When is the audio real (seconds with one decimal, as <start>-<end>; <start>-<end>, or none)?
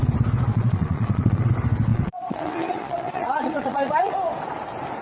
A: 0.0-0.5; 1.5-1.9; 4.1-5.0